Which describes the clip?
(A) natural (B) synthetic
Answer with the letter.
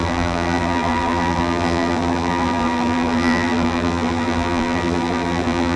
B